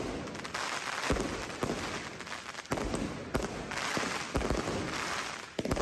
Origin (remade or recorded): recorded